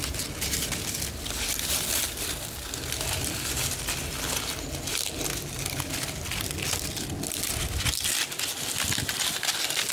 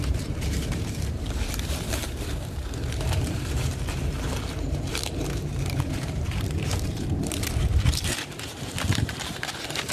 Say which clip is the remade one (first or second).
second